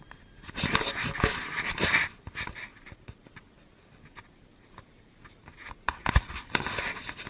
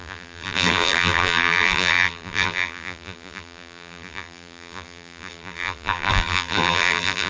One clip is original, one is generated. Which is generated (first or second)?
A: second